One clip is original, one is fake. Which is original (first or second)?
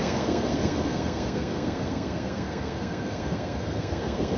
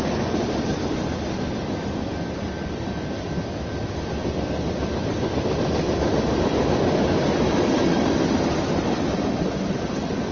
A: second